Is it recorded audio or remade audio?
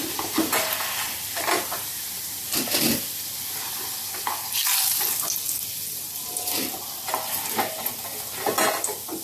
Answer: recorded